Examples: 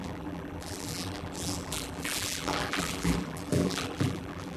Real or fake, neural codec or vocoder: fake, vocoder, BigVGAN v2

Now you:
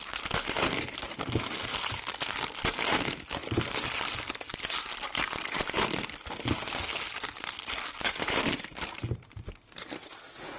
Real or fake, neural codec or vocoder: real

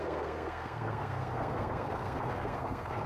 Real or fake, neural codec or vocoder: fake, codec, SNAC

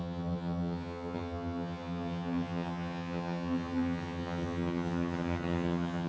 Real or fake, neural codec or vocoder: fake, vocoder, HiFi-GAN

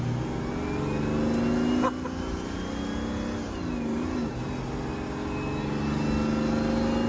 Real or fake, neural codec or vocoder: real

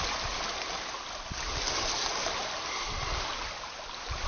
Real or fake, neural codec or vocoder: real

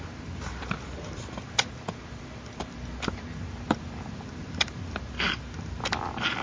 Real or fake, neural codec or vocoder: fake, vocoder, BigVGAN v2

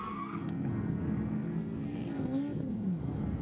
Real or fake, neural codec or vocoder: fake, codec, SNAC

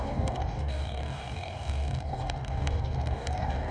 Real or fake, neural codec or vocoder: fake, codec, DAC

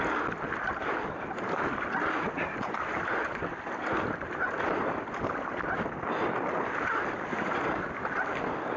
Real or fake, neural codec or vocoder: real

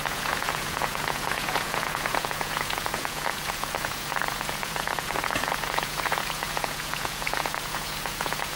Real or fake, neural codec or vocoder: fake, vocoder, Vocos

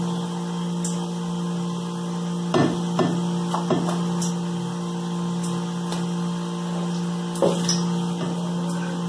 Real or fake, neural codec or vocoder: real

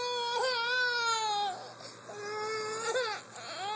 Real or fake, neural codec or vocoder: real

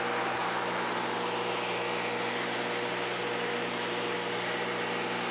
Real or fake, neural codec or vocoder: real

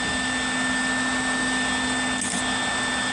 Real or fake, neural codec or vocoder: real